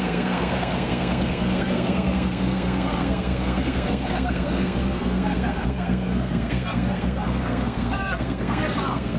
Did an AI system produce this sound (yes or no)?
yes